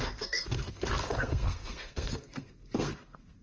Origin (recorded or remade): remade